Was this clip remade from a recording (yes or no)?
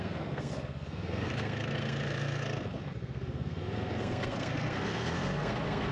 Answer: yes